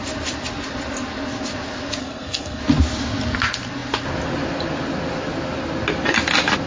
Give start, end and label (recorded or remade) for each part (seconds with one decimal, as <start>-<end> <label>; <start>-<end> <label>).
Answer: 0.0-2.0 recorded; 2.0-2.6 remade; 2.6-6.7 recorded